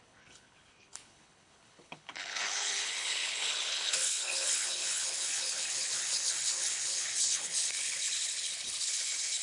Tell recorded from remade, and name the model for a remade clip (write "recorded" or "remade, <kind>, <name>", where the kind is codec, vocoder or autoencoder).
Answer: remade, codec, HILCodec